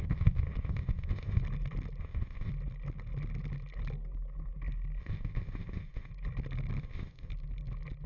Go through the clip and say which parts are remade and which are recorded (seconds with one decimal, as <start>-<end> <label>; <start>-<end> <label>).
0.0-1.4 remade; 1.4-2.0 recorded; 2.0-2.5 remade; 2.5-5.0 recorded; 5.0-6.1 remade; 6.1-6.8 recorded; 6.8-7.3 remade; 7.3-8.1 recorded